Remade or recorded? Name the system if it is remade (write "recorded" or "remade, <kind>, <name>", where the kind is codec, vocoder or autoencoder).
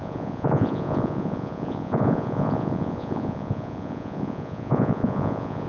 remade, vocoder, Vocos